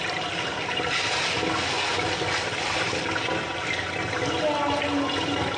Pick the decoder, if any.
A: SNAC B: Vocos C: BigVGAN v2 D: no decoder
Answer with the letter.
D